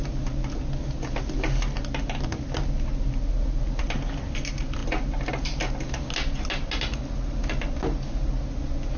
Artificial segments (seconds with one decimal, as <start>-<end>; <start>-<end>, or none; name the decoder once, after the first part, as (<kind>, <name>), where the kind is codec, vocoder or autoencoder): none